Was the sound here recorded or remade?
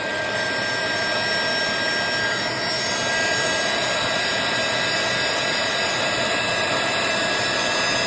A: recorded